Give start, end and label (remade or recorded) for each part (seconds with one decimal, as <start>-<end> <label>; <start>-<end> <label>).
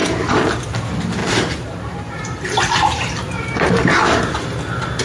0.0-0.5 remade; 0.5-1.2 recorded; 1.2-4.2 remade; 4.2-5.0 recorded